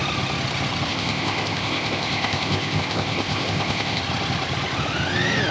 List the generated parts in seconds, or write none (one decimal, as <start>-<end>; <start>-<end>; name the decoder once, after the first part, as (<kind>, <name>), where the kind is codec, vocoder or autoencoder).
0.9-4.0 (codec, ZipCodec)